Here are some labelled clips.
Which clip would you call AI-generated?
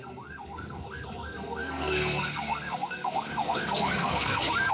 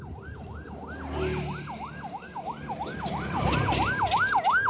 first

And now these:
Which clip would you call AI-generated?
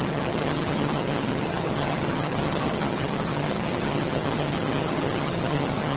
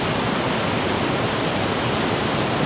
first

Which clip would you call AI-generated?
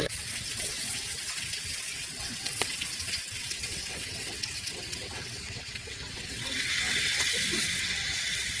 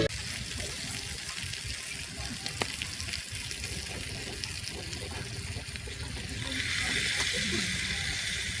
first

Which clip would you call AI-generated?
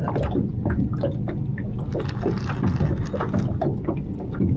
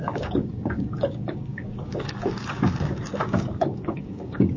second